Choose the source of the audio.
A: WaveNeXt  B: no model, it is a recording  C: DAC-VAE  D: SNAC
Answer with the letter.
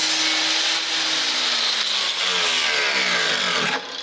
B